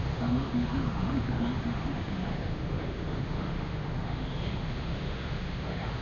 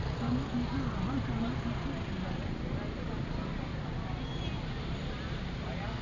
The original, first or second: second